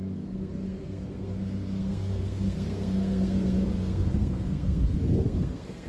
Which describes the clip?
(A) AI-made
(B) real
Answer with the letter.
A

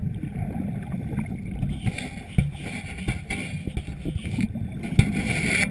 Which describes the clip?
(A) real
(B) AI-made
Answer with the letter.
A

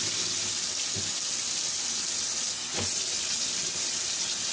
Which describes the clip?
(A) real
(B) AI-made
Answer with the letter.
A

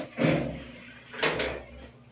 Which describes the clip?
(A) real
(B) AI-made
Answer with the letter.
A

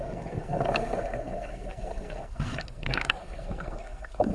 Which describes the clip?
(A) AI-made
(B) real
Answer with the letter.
A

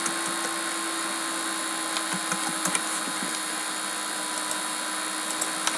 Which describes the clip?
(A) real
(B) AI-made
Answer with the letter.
A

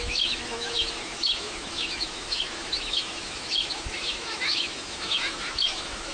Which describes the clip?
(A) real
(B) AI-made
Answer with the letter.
B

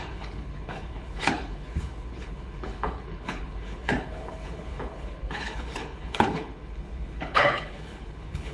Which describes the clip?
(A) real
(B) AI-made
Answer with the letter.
B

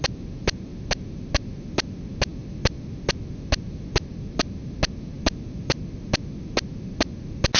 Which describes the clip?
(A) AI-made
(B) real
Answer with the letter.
B